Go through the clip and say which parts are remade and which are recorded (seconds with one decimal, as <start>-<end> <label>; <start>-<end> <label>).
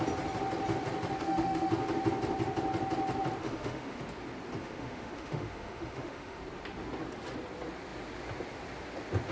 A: 0.0-1.2 recorded; 1.2-1.7 remade; 1.7-3.4 recorded; 3.4-4.0 remade; 4.0-4.6 recorded; 4.6-6.4 remade; 6.4-9.3 recorded